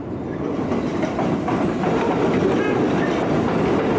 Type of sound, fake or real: real